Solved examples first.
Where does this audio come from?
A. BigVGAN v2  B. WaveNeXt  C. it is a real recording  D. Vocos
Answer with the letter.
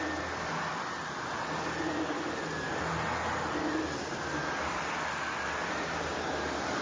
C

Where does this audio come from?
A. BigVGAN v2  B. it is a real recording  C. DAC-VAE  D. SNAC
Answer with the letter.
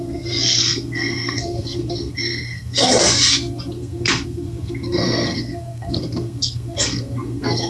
D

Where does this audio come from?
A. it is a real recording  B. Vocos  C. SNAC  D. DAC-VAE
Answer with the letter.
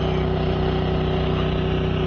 A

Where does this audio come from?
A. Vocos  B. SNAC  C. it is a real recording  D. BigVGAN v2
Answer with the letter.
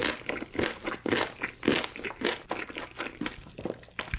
C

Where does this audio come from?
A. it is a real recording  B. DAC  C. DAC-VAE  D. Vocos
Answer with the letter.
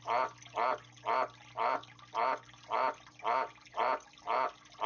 A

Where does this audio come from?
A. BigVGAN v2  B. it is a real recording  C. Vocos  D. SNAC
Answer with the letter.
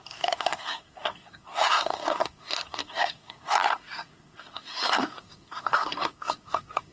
D